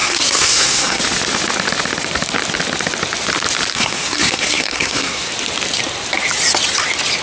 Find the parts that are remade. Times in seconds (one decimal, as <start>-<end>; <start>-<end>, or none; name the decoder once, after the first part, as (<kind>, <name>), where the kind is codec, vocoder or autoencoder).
0.0-1.0 (codec, SNAC); 3.7-5.3